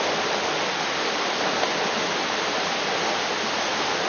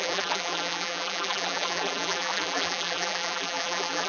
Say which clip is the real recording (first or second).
first